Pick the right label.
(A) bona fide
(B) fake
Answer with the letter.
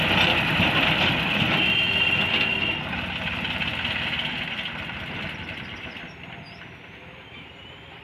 A